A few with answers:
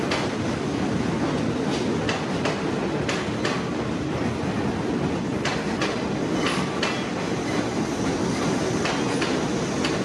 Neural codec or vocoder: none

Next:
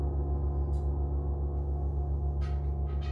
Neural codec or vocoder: none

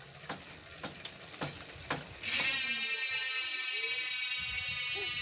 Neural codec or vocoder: none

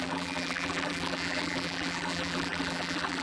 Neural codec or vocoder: vocoder, BigVGAN v2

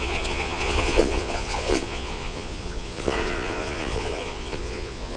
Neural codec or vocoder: vocoder, Vocos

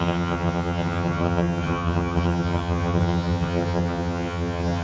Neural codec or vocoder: vocoder, HiFi-GAN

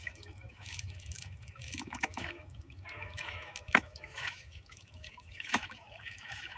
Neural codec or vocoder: autoencoder, DAC-VAE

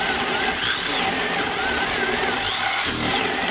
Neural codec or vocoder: none